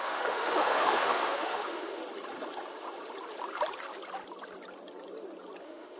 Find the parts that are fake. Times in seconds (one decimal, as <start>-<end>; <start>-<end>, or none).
0.0-2.0; 5.6-6.0

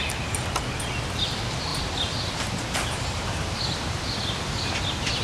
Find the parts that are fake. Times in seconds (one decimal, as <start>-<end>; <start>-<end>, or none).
none

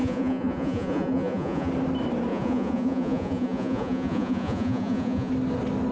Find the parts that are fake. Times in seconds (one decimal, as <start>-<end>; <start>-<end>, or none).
0.0-1.7; 2.3-5.3

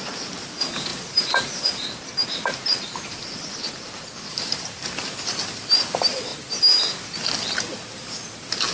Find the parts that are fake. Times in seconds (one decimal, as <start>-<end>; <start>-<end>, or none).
0.9-4.8

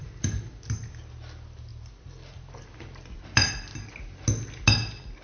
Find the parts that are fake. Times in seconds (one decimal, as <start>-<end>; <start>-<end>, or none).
0.0-0.5; 1.7-3.5

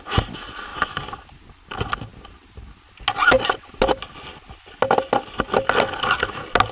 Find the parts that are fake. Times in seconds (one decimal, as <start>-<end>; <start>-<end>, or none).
none

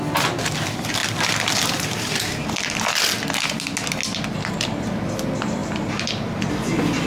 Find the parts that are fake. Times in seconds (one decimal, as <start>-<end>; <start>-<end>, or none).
5.6-6.5